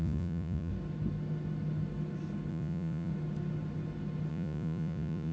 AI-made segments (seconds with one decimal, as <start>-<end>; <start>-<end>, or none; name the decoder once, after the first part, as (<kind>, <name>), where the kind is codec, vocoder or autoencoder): 0.0-0.7 (vocoder, Vocos); 2.5-3.1; 4.3-5.3